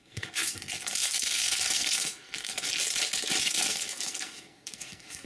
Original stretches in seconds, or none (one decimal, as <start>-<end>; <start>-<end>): 2.7-3.4